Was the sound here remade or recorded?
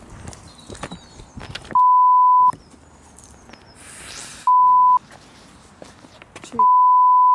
recorded